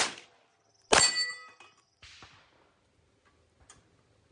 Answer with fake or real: real